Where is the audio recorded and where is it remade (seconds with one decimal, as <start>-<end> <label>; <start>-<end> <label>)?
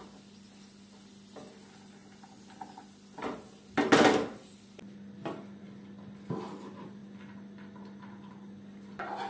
0.0-9.3 recorded